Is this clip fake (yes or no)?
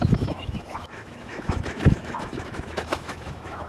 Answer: yes